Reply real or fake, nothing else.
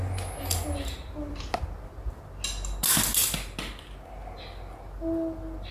real